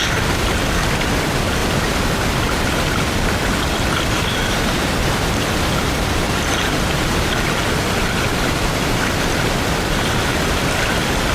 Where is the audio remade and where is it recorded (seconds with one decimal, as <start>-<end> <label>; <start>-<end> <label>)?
0.0-11.3 recorded